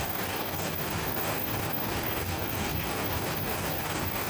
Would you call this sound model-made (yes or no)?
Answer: yes